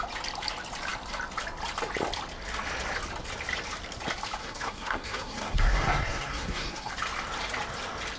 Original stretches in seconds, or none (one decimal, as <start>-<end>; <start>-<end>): 0.0-4.4; 6.9-8.2